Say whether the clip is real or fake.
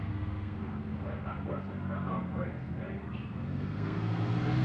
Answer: fake